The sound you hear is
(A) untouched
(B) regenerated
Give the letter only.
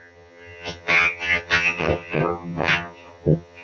B